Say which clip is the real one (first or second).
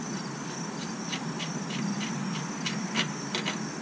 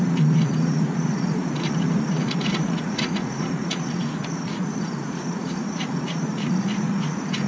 first